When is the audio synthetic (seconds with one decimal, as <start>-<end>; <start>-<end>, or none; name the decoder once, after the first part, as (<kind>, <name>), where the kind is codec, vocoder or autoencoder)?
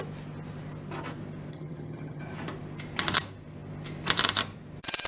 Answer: 1.5-2.2 (vocoder, HiFi-GAN)